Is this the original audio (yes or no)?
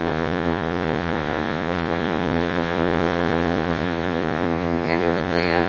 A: no